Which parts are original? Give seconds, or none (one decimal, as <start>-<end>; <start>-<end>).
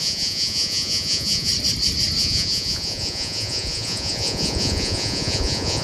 1.5-2.2